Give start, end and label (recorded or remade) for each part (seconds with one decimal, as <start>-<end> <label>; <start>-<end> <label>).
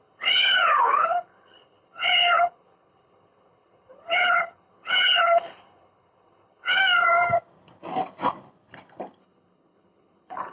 0.0-6.8 remade; 6.8-9.2 recorded; 9.2-10.5 remade